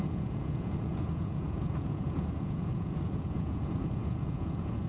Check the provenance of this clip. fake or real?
fake